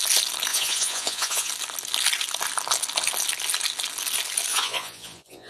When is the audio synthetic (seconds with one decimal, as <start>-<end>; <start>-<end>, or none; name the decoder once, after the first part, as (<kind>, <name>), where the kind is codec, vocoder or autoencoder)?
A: 0.5-1.5 (vocoder, Vocos); 4.5-5.5